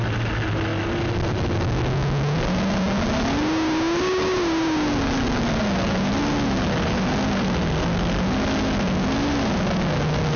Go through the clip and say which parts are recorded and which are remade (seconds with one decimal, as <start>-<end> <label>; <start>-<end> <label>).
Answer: 0.0-10.4 recorded